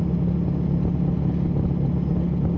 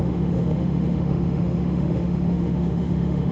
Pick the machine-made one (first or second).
second